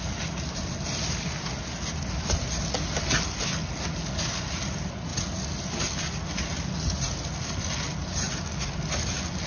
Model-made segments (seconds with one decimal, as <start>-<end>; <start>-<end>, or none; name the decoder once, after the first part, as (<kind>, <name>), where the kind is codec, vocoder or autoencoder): none